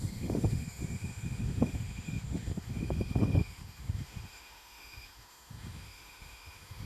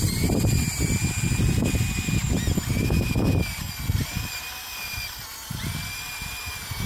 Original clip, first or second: second